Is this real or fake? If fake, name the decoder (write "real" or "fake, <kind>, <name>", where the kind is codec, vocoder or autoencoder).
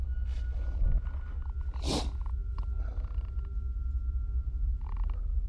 real